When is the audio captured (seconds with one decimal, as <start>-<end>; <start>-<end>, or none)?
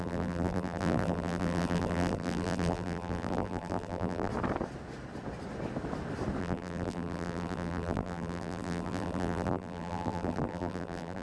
4.3-6.4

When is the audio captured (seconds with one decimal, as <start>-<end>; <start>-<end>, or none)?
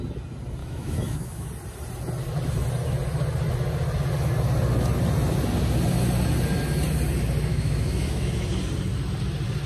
0.0-0.6; 1.5-7.5; 8.3-9.7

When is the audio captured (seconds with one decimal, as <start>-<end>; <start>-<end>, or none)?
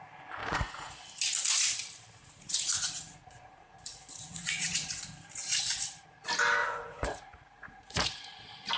0.0-0.4; 1.0-2.2; 5.2-6.6; 8.2-8.8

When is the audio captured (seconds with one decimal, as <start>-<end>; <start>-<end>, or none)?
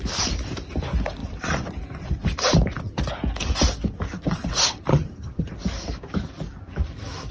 0.0-4.9; 5.5-7.3